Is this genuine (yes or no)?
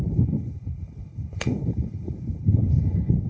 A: no